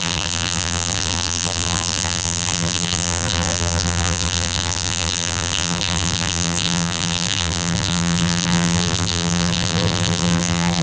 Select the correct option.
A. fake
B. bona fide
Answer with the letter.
A